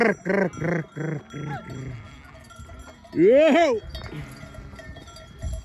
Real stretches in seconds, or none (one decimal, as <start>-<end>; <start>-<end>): 0.0-5.6